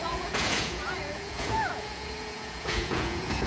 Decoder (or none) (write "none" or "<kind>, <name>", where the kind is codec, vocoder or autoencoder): vocoder, Vocos